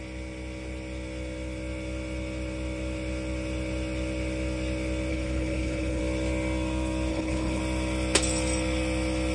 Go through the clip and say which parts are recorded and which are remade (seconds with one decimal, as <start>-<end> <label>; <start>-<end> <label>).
0.0-5.1 recorded; 5.1-6.0 remade; 6.0-7.1 recorded; 7.1-7.6 remade; 7.6-9.3 recorded

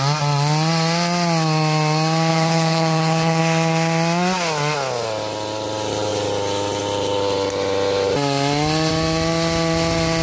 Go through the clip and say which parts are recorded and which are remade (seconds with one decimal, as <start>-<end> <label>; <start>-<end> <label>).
0.0-2.3 recorded; 2.3-3.4 remade; 3.4-10.2 recorded

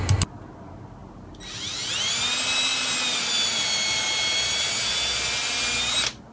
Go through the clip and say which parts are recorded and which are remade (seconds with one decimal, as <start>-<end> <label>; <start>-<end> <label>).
0.0-6.3 recorded

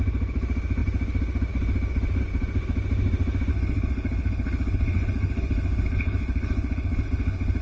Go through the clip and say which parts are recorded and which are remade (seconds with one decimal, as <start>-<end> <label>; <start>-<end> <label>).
0.0-3.5 recorded; 3.5-7.6 remade

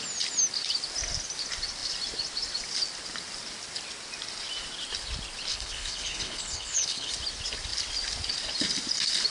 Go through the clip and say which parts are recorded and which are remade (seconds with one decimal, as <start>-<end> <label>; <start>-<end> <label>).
0.0-5.5 recorded; 5.5-7.1 remade; 7.1-9.3 recorded

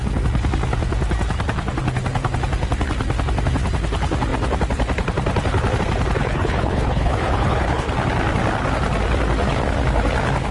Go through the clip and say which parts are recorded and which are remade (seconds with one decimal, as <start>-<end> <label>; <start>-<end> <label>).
0.0-6.2 recorded; 6.2-7.9 remade; 7.9-10.5 recorded